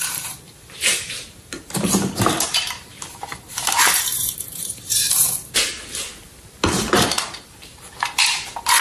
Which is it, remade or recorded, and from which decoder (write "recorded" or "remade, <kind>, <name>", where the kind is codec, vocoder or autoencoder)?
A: remade, vocoder, BigVGAN v2